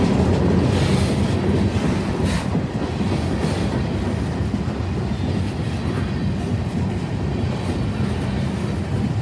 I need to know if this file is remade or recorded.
recorded